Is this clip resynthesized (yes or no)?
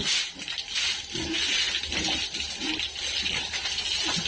no